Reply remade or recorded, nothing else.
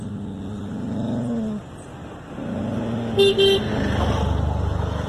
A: recorded